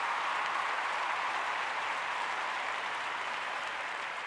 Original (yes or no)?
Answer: no